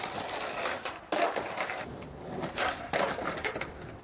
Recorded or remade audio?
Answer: recorded